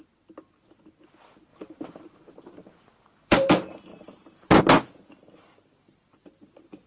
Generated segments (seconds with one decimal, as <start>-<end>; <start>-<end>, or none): 1.5-3.5; 3.9-4.6